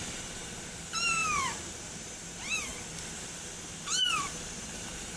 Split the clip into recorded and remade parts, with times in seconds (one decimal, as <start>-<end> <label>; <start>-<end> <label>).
0.0-2.7 remade; 2.7-3.7 recorded; 3.7-5.2 remade